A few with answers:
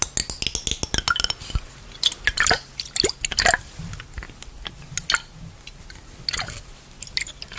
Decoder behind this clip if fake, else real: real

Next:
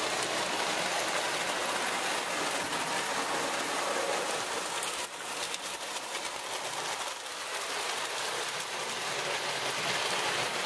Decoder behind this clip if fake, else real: real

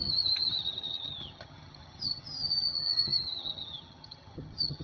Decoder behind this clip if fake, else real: fake, vocoder, HiFi-GAN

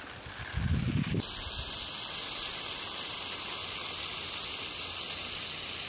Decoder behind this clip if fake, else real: real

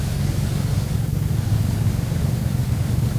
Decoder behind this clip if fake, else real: fake, codec, DAC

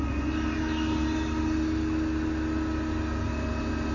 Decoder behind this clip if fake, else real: real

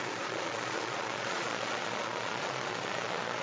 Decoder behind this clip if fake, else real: fake, vocoder, Vocos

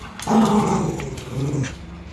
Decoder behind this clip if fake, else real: real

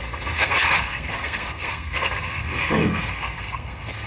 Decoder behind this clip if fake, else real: fake, codec, SNAC